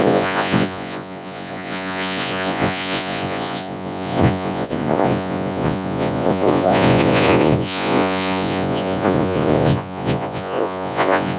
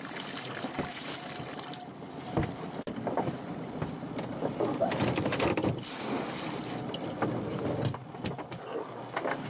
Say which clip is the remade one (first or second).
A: first